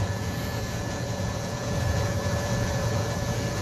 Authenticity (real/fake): fake